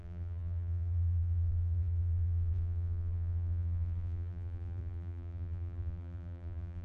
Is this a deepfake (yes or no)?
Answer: yes